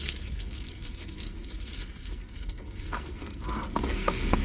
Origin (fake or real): fake